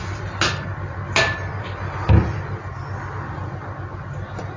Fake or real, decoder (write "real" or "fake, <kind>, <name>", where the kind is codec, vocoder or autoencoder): real